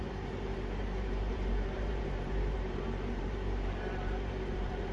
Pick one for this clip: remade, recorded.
remade